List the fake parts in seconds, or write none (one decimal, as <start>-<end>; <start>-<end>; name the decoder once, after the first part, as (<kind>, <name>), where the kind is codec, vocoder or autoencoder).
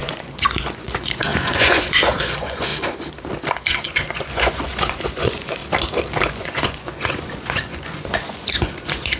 0.0-2.7 (vocoder, Vocos); 3.5-5.6; 6.3-9.2